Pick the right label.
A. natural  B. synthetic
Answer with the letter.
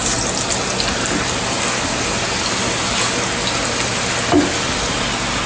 A